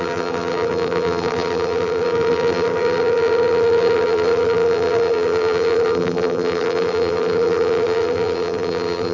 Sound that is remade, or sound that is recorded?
remade